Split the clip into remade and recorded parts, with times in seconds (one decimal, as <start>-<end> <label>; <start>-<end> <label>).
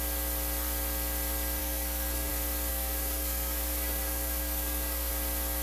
0.0-1.6 recorded; 1.6-2.3 remade; 2.3-2.7 recorded; 2.7-5.1 remade; 5.1-5.6 recorded